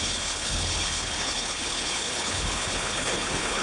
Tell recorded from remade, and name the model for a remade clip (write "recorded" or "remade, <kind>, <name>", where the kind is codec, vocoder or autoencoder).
remade, codec, HILCodec